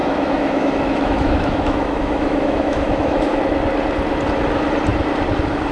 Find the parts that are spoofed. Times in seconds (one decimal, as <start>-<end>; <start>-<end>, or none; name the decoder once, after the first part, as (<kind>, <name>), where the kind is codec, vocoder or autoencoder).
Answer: 0.0-3.4 (autoencoder, DAC-VAE)